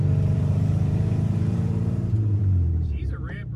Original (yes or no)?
no